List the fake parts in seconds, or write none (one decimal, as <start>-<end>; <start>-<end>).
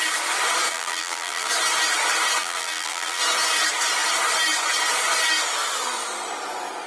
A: 0.7-1.5; 2.4-3.2